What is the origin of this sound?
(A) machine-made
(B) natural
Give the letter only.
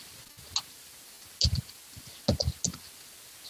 B